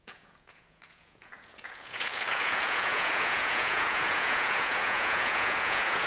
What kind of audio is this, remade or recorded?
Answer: remade